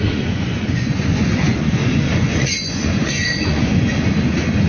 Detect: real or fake fake